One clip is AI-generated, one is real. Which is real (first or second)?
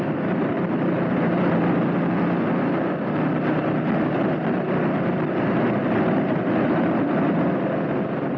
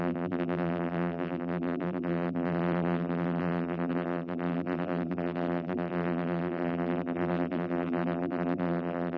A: first